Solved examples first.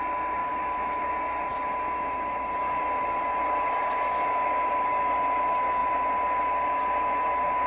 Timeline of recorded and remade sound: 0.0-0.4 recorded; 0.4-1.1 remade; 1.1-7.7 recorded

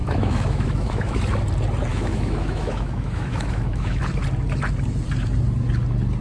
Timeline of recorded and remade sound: 0.0-1.2 remade; 1.2-1.9 recorded; 1.9-4.0 remade; 4.0-6.2 recorded

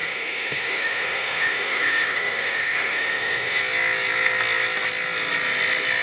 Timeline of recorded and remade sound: 0.0-3.6 remade; 3.6-6.0 recorded

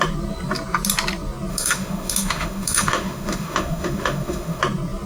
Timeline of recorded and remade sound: 0.0-1.5 recorded; 1.5-4.6 remade; 4.6-5.1 recorded

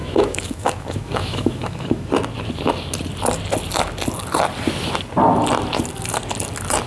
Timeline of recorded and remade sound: 0.0-2.1 remade; 2.1-6.9 recorded

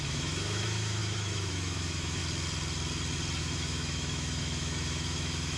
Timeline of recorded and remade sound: 0.0-2.2 remade; 2.2-3.4 recorded; 3.4-5.6 remade

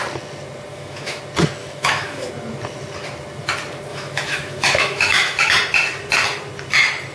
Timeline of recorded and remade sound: 0.0-0.7 recorded; 0.7-1.2 remade; 1.2-1.6 recorded; 1.6-2.3 remade; 2.3-3.9 recorded; 3.9-5.5 remade; 5.5-7.1 recorded

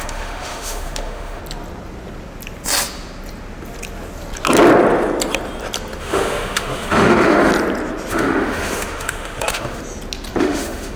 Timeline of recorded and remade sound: 0.0-1.4 remade; 1.4-6.0 recorded; 6.0-7.5 remade; 7.5-8.1 recorded; 8.1-9.8 remade; 9.8-10.4 recorded; 10.4-11.0 remade